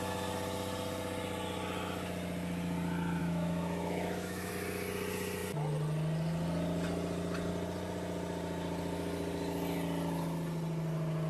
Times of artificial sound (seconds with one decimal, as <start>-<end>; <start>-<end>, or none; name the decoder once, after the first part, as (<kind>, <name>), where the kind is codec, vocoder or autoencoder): 3.2-4.5 (autoencoder, DAC-VAE)